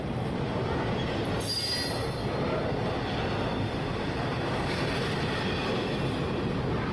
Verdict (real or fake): real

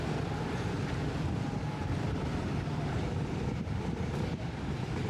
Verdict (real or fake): fake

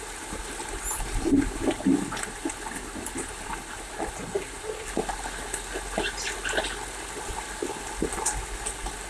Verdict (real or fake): real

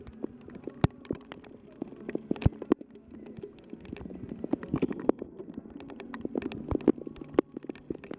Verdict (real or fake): real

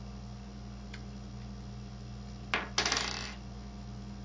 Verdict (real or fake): real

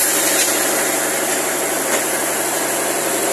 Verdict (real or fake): fake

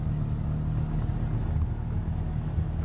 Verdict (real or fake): real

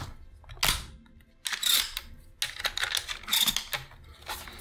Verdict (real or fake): real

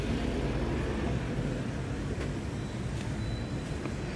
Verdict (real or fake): real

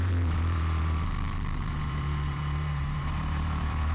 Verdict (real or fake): fake